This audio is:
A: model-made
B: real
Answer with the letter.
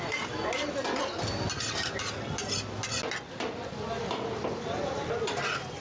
B